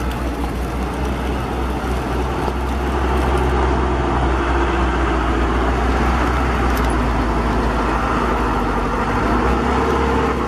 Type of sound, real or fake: real